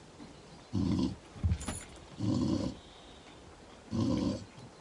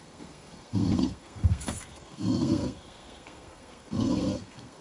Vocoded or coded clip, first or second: second